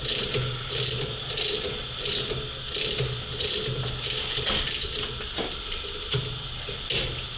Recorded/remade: recorded